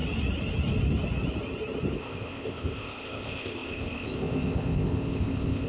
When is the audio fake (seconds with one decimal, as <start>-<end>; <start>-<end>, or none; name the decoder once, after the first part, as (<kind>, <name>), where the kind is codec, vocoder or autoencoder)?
2.0-5.7 (codec, ZipCodec)

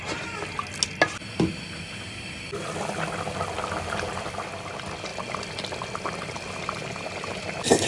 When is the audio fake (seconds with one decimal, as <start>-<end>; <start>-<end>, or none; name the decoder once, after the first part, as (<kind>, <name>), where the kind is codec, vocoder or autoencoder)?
none

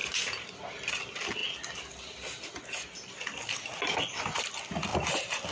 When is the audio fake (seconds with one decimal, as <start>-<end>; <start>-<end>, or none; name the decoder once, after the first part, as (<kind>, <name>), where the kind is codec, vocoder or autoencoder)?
none

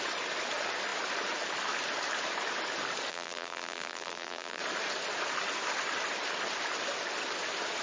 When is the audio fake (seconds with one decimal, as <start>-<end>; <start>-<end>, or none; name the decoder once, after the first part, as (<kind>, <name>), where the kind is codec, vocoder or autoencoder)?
3.1-4.6 (vocoder, BigVGAN v2)

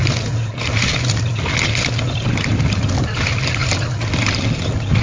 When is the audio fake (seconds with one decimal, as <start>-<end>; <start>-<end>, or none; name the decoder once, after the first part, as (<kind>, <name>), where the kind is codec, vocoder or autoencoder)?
none

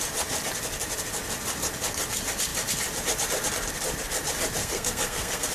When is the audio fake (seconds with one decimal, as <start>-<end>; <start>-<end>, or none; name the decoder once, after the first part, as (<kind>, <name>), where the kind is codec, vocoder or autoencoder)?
4.6-5.5 (codec, SNAC)

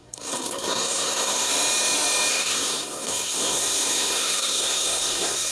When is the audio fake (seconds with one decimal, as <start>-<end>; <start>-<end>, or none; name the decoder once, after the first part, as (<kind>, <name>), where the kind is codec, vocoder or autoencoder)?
0.0-1.5 (codec, SNAC); 2.3-5.5